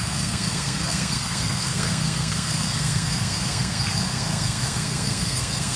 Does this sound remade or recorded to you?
remade